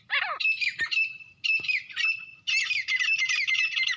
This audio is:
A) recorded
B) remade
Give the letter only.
A